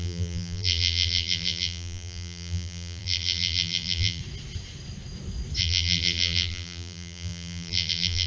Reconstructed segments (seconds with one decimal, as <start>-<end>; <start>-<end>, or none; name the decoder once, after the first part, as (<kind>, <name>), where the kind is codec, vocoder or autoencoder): 0.0-4.2 (vocoder, BigVGAN v2); 5.6-8.3